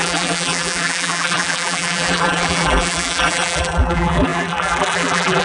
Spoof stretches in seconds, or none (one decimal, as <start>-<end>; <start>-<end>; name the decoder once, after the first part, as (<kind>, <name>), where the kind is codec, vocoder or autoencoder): 0.0-5.4 (vocoder, BigVGAN v2)